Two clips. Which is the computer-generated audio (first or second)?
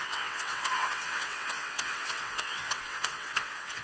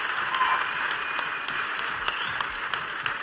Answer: first